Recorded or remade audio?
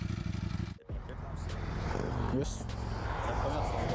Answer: recorded